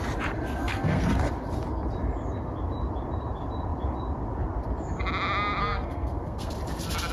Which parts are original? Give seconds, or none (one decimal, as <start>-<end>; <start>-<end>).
0.0-0.6; 1.3-5.6; 6.5-7.1